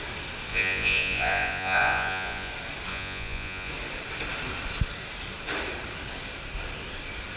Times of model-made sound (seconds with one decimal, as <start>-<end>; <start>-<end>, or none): 0.5-2.5; 2.9-3.7